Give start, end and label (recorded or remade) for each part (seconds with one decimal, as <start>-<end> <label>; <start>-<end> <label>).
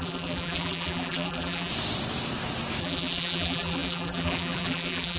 0.0-1.7 remade; 1.7-2.8 recorded; 2.8-5.2 remade